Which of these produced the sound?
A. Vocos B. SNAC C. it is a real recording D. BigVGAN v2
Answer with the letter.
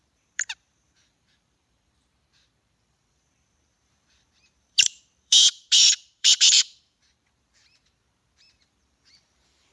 D